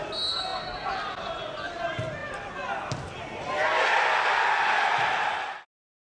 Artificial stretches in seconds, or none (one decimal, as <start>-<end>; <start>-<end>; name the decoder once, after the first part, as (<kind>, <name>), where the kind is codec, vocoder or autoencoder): none